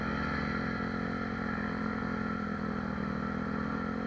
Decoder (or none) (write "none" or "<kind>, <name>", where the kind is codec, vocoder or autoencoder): none